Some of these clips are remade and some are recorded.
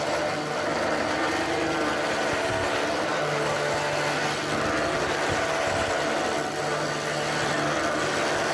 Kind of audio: recorded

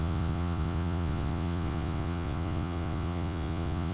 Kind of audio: remade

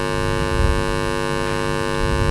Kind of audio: recorded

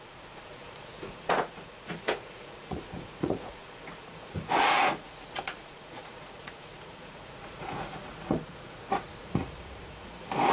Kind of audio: remade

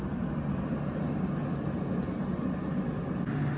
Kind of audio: recorded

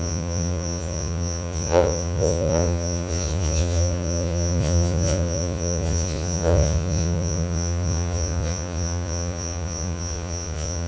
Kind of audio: remade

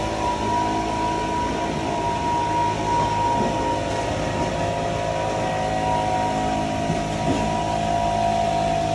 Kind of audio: recorded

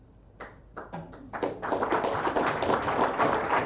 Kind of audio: recorded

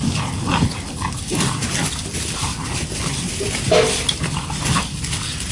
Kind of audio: recorded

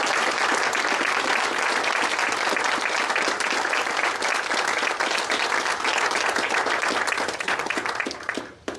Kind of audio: recorded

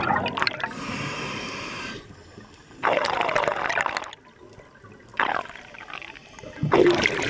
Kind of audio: recorded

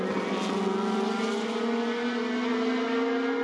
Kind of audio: recorded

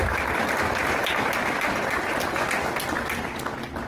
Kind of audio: recorded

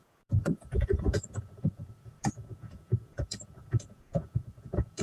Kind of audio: remade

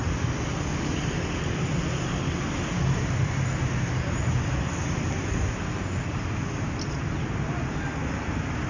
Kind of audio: recorded